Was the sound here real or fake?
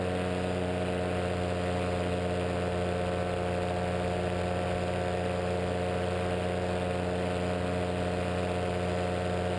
real